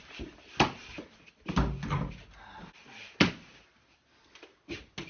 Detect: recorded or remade recorded